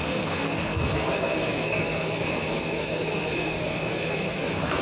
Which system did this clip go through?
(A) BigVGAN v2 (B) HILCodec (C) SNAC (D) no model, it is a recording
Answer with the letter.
C